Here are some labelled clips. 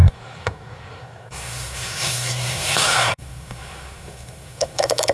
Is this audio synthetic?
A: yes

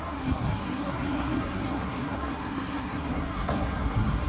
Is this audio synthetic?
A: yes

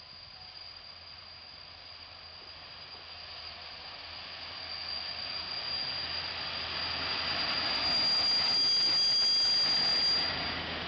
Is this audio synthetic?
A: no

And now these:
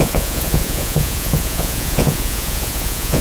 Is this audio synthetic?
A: yes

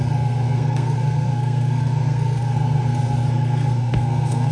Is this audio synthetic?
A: yes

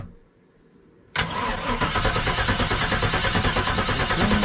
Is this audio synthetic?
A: no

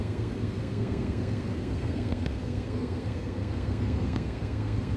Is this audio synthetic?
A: yes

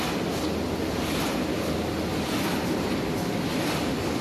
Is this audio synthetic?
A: no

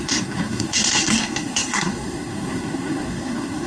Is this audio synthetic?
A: yes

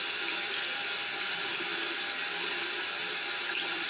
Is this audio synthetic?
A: no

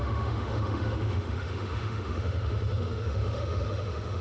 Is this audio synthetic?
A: yes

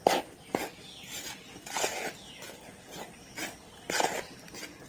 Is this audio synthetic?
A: no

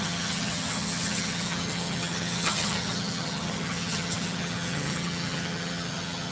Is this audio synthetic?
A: yes